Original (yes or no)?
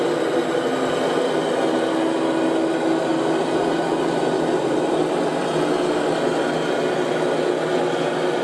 yes